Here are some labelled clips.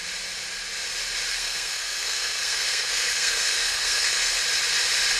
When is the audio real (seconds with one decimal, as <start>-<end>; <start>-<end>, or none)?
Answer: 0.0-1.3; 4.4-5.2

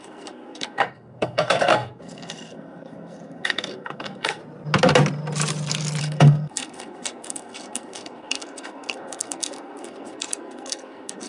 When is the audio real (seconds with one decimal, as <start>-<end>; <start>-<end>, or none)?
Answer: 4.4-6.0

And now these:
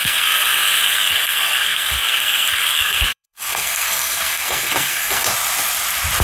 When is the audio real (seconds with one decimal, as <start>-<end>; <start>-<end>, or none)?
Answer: 5.3-6.2

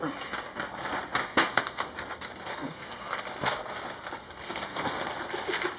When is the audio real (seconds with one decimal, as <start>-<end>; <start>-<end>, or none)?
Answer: 0.0-1.2; 1.9-2.5; 3.2-4.2; 5.0-5.8

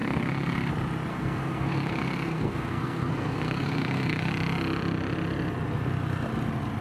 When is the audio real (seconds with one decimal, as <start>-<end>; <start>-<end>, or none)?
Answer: 0.7-1.1; 4.3-6.8

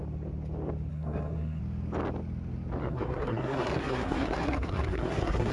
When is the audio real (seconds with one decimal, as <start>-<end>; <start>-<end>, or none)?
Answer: 0.0-0.9; 1.6-2.8

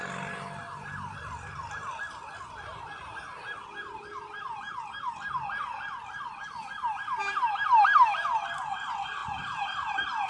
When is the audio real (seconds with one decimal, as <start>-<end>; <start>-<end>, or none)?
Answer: 0.0-10.3

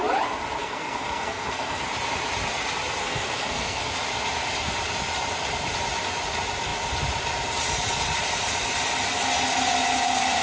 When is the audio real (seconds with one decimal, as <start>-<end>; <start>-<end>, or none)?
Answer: 0.0-0.6; 1.8-3.0; 3.9-10.4